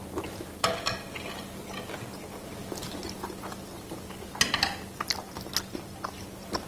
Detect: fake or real real